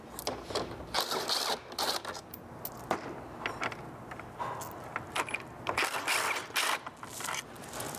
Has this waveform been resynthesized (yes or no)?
no